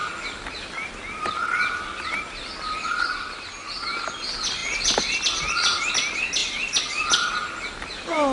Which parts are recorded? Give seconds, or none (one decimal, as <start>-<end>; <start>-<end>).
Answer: 0.0-8.3